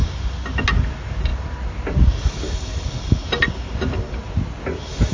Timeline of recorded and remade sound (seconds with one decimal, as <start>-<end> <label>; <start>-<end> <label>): 0.0-5.1 recorded